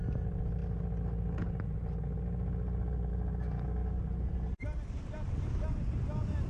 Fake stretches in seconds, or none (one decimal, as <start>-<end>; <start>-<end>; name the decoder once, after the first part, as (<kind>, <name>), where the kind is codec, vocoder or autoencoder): none